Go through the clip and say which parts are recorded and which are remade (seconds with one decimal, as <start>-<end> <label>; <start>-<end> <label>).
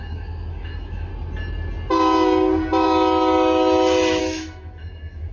0.0-1.1 remade; 1.1-4.2 recorded; 4.2-5.3 remade